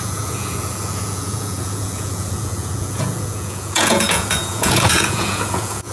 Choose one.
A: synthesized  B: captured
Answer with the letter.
A